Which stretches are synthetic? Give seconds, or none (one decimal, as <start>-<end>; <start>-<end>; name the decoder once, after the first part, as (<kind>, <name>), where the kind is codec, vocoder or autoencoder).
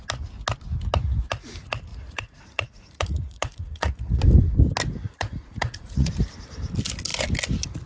1.9-4.2 (vocoder, Vocos); 5.0-6.1